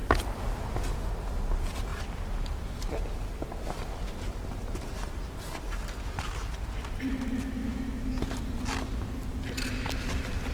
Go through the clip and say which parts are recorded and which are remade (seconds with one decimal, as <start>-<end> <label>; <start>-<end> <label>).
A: 0.0-7.6 recorded; 7.6-8.1 remade; 8.1-10.5 recorded